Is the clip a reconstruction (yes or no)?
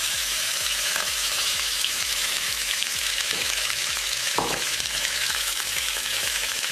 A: yes